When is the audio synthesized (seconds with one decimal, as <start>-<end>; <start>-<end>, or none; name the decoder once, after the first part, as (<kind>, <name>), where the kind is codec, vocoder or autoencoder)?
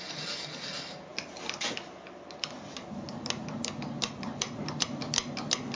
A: none